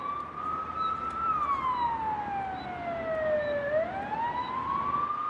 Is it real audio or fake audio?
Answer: real